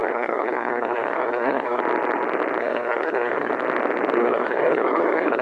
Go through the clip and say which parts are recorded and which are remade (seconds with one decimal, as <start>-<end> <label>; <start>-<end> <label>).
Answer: 0.0-1.8 remade; 1.8-2.6 recorded; 2.6-3.5 remade; 3.5-4.2 recorded; 4.2-5.4 remade